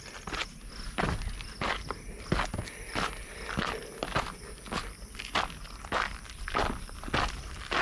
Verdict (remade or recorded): recorded